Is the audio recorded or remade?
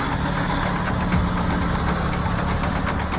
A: recorded